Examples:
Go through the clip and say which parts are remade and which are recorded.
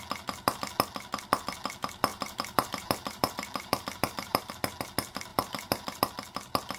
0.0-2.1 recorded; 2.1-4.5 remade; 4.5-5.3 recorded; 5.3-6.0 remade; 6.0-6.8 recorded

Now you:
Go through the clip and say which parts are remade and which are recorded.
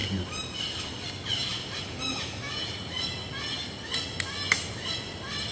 0.0-1.1 remade; 1.1-5.5 recorded